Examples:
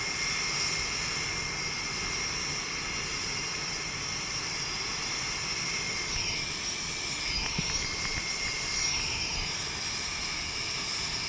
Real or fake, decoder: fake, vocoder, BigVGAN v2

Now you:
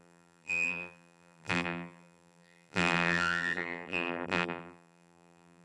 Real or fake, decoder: fake, vocoder, BigVGAN v2